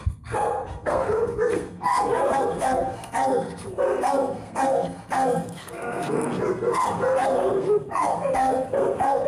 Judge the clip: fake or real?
fake